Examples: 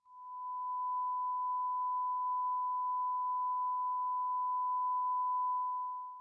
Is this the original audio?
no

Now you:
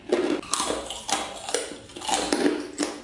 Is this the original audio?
yes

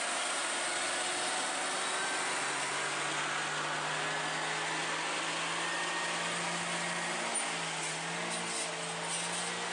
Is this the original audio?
yes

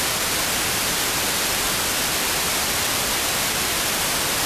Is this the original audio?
yes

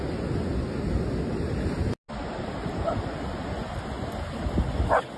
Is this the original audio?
yes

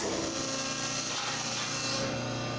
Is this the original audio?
yes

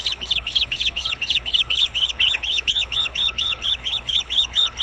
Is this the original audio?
no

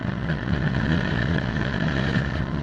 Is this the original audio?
no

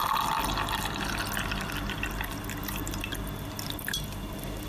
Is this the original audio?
yes